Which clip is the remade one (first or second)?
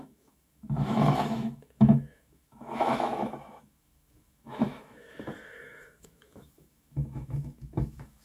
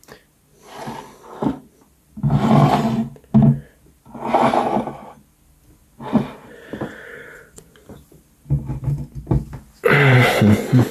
first